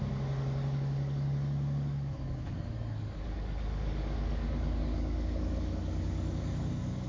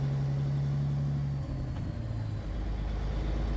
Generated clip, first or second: first